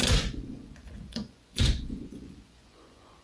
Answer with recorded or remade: remade